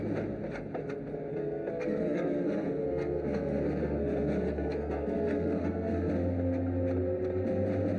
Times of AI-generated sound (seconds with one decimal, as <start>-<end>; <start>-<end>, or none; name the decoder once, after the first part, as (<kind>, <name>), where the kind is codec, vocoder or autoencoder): 1.3-6.1 (codec, SNAC)